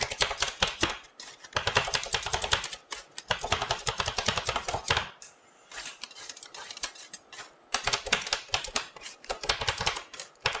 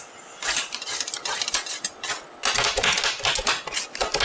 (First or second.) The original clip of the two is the second